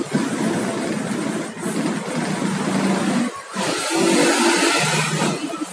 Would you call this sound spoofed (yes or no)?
no